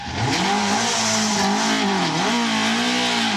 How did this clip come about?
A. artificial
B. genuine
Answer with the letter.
B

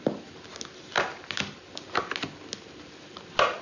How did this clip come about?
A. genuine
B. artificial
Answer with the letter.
A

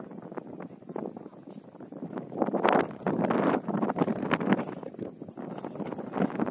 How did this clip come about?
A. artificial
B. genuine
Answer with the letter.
B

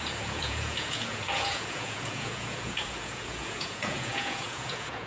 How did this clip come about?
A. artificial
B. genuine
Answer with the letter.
A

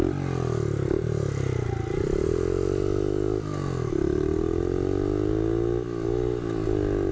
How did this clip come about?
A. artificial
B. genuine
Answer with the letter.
B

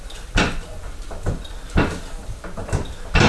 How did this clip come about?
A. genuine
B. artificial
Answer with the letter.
A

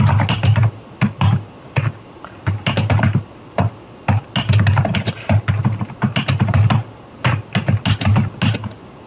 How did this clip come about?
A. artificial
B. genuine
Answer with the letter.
B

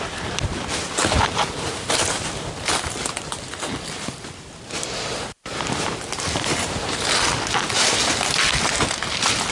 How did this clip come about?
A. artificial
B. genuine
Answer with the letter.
B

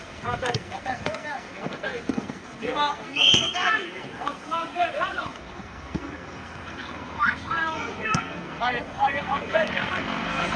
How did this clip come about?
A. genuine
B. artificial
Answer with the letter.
B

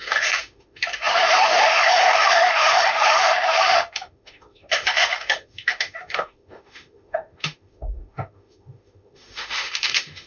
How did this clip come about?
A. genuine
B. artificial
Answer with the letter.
B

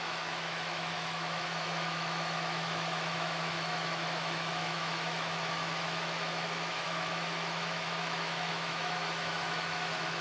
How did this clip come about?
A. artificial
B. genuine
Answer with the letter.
A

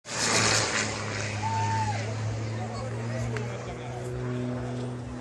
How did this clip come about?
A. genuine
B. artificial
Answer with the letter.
A